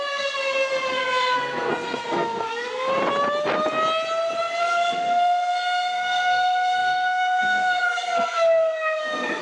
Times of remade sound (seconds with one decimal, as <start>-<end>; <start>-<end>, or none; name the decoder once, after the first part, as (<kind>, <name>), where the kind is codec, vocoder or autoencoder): 0.0-3.0 (codec, SNAC); 4.6-9.4